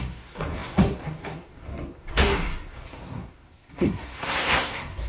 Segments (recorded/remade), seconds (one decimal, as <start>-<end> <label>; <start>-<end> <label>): 0.0-5.1 remade